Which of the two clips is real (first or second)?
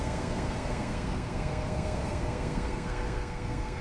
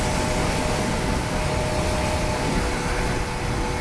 second